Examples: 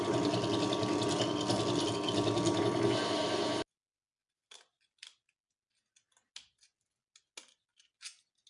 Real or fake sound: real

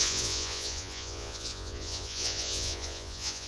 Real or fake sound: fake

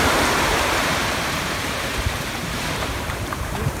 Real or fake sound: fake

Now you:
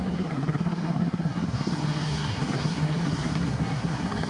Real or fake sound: fake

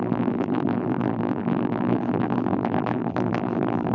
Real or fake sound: fake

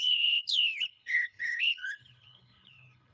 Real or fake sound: fake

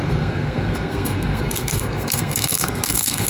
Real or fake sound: fake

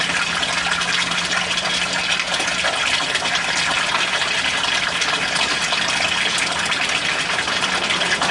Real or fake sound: real